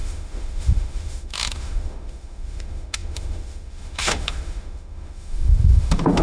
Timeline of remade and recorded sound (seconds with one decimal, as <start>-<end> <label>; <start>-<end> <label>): 0.0-6.2 remade